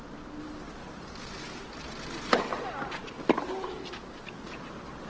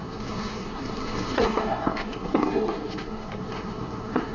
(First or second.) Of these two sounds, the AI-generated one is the second